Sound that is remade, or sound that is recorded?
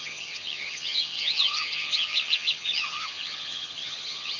remade